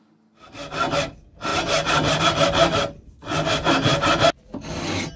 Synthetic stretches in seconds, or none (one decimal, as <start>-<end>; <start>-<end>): none